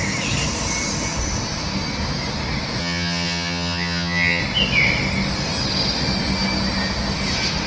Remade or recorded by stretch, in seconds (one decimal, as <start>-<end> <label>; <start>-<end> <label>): 0.0-2.8 recorded; 2.8-4.4 remade; 4.4-7.7 recorded

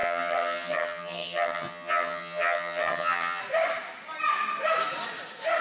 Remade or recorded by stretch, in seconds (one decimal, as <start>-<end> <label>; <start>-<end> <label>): 0.0-3.4 remade; 3.4-5.6 recorded

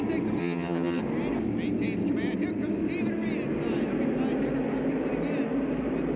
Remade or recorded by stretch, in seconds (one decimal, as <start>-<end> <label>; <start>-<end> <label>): 0.0-0.4 recorded; 0.4-1.0 remade; 1.0-6.2 recorded

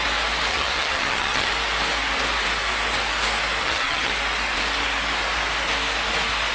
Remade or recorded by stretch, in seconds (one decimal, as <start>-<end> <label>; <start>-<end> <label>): 0.0-0.5 recorded; 0.5-1.5 remade; 1.5-3.6 recorded; 3.6-4.1 remade; 4.1-6.5 recorded

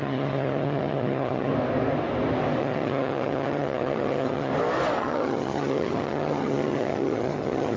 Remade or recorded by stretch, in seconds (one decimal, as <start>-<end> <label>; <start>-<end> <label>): 0.0-1.5 remade; 1.5-2.6 recorded; 2.6-4.5 remade; 4.5-5.0 recorded; 5.0-7.8 remade

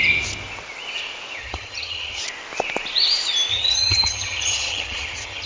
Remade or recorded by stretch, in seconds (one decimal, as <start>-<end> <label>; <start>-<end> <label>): 0.0-1.4 recorded; 1.4-2.2 remade; 2.2-3.5 recorded; 3.5-5.5 remade